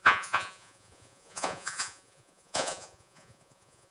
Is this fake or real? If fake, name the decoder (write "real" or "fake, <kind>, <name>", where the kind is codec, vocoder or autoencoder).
fake, vocoder, Vocos